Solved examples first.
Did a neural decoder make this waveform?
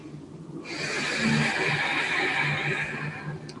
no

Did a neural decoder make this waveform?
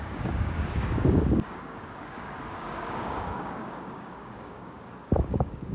yes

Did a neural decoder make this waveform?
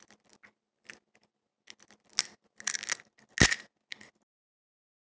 no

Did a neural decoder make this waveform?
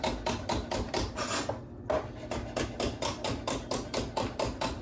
no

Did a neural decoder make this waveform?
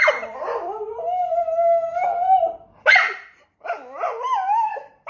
no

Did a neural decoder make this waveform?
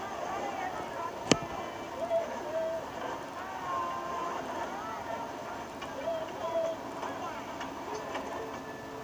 no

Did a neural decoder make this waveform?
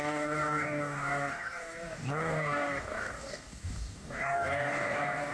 yes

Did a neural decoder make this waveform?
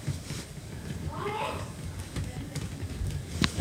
yes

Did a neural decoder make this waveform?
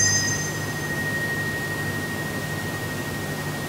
no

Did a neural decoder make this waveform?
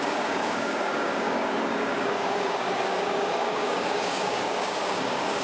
yes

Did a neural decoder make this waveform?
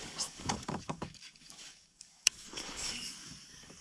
yes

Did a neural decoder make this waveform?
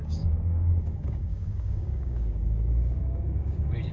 yes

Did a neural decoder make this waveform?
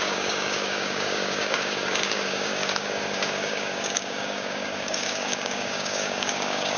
yes